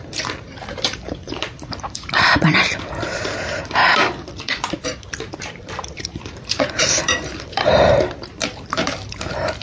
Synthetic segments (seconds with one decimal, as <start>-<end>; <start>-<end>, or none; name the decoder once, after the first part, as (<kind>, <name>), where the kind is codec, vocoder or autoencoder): 0.0-3.8 (vocoder, BigVGAN v2); 5.6-9.6